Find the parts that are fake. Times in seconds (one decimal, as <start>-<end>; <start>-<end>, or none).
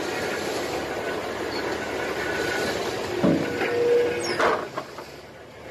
none